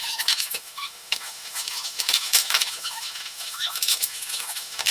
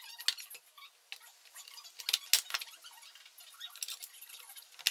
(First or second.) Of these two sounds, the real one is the second